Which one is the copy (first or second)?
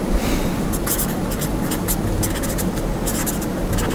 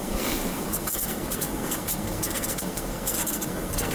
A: second